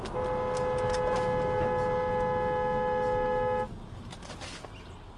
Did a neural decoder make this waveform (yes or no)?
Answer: no